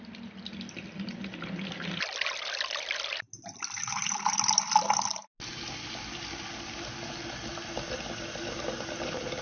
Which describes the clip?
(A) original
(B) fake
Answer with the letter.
A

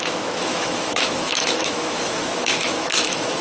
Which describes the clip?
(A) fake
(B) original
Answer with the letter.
A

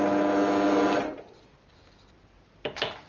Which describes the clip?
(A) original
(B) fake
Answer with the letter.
A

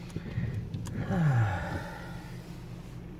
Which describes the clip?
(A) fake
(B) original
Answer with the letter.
B